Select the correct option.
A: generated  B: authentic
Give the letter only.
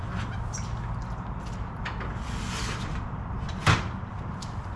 B